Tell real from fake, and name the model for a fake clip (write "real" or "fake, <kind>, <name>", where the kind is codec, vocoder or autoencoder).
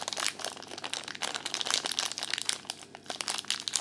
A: real